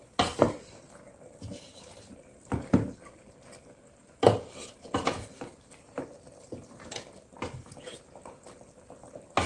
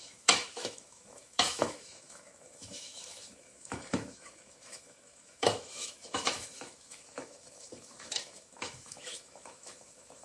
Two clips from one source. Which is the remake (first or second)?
second